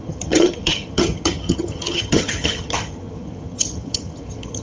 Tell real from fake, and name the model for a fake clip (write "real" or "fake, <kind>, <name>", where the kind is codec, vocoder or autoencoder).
fake, vocoder, HiFi-GAN